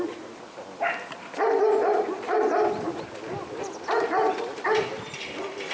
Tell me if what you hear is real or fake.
real